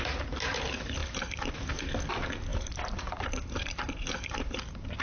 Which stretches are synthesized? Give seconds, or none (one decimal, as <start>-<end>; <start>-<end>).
1.0-1.8; 2.5-4.6